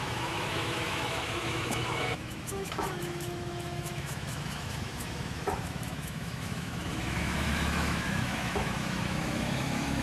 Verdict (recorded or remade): remade